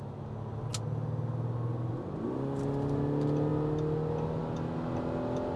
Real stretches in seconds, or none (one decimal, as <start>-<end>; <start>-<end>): 0.0-5.6

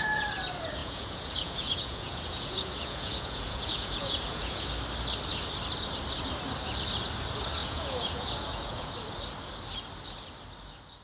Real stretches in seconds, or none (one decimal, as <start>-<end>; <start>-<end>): 0.0-0.8; 4.7-7.6; 8.9-11.0